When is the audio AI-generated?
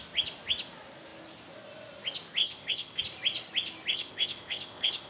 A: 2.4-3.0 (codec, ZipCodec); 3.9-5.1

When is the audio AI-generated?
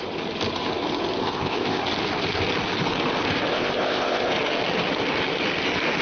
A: 1.2-1.8 (codec, ZipCodec); 3.5-4.3